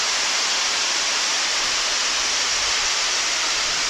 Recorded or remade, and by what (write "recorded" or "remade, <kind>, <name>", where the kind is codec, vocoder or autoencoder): remade, vocoder, BigVGAN v2